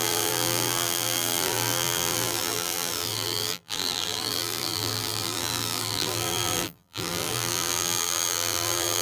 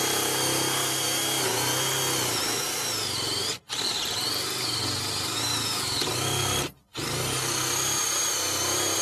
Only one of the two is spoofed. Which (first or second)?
first